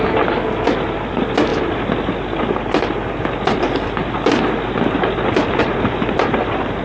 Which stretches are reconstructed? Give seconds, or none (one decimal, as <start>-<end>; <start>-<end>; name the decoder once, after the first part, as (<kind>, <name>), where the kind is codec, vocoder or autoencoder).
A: none